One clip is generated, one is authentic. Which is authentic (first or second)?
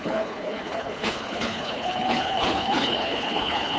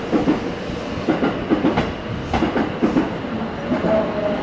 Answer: second